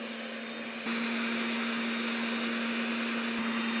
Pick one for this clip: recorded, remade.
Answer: recorded